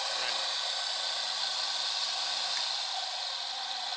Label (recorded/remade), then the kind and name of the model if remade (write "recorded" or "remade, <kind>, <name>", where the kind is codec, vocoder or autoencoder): recorded